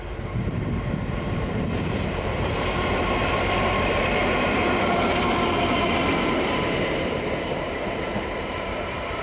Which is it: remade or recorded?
remade